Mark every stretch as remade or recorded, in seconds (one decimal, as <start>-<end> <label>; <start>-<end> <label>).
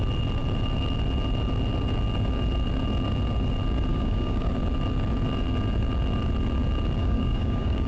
0.0-3.9 recorded; 3.9-4.5 remade; 4.5-7.0 recorded; 7.0-7.9 remade